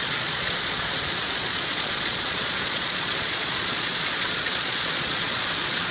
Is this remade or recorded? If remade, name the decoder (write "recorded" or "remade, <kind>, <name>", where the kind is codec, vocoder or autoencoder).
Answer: remade, vocoder, Vocos